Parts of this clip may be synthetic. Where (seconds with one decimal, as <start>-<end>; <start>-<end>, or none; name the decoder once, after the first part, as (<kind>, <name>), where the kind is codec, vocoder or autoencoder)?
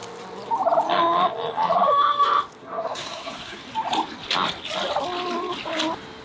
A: 2.6-3.6 (codec, SNAC)